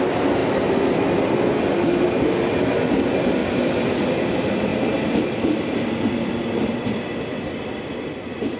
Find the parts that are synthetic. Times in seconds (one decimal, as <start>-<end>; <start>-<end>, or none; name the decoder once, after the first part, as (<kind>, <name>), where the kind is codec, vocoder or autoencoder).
0.0-0.4 (vocoder, BigVGAN v2); 1.6-4.7; 5.2-8.6